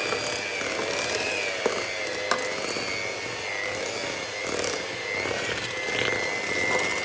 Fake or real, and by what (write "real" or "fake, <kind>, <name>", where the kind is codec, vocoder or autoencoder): real